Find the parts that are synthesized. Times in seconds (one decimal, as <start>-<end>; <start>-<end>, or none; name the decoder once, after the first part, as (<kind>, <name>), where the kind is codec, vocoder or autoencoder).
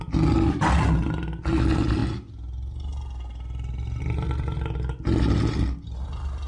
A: none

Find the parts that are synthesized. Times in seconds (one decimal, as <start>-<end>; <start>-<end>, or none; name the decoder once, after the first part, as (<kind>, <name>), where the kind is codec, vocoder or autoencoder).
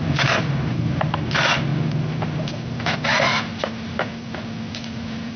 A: 0.0-1.7 (vocoder, BigVGAN v2); 3.6-4.1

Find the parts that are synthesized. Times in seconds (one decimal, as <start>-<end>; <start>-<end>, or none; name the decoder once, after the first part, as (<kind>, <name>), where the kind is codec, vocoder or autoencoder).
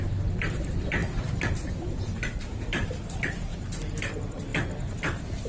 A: 0.0-3.5 (vocoder, BigVGAN v2); 4.0-5.5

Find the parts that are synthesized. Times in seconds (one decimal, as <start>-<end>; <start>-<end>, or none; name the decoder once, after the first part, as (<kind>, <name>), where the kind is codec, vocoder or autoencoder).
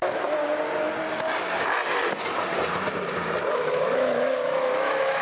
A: 0.0-0.4 (autoencoder, DAC-VAE); 3.5-5.2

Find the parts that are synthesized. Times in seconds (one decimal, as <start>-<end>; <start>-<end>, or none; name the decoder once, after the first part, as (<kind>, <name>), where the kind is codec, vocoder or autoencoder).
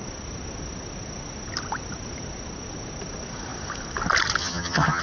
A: 4.4-5.0 (vocoder, HiFi-GAN)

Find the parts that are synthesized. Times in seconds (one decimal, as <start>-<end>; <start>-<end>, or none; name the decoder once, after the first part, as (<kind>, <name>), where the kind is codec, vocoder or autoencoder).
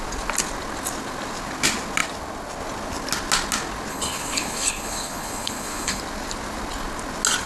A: 3.9-6.0 (codec, HILCodec)